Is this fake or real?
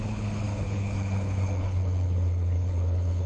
fake